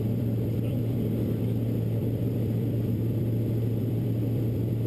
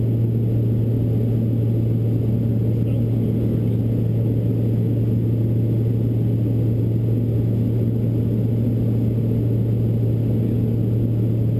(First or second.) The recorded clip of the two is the second